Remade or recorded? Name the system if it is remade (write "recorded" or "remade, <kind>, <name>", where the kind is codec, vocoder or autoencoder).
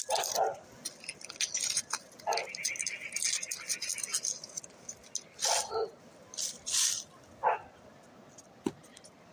recorded